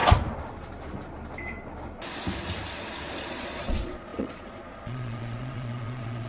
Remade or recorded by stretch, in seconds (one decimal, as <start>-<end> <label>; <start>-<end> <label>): 0.0-3.3 recorded; 3.3-6.3 remade